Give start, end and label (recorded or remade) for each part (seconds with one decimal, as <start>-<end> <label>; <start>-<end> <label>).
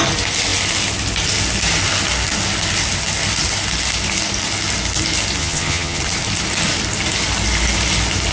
0.0-5.4 recorded; 5.4-6.0 remade; 6.0-8.3 recorded